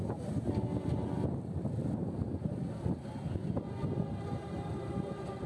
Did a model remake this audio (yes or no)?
no